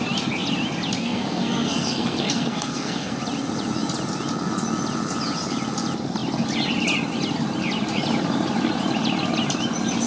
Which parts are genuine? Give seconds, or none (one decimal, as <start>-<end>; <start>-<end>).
0.0-1.0; 3.2-10.1